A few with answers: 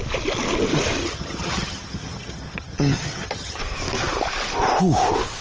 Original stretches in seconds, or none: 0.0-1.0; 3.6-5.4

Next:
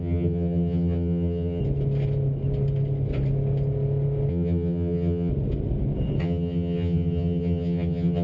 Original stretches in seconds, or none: 1.6-4.3; 5.3-6.2

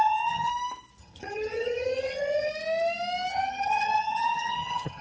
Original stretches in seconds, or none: 0.5-1.0; 2.5-3.3

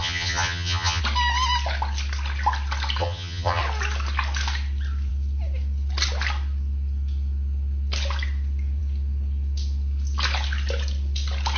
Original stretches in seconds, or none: 1.0-3.0; 3.6-11.6

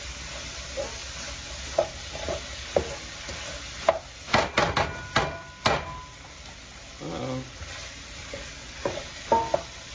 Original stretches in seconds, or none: 0.0-9.9

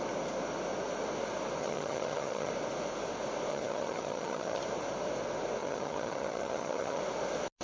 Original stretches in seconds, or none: 0.0-1.6; 2.5-3.5; 4.6-5.6; 7.0-7.6

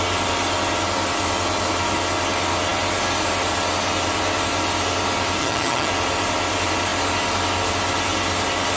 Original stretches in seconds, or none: 0.0-5.4; 5.9-8.8

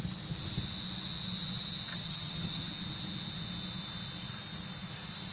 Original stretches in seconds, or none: 0.0-1.9; 2.7-5.3